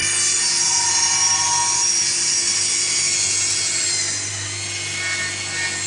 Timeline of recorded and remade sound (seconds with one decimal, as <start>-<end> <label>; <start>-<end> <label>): 0.0-5.9 recorded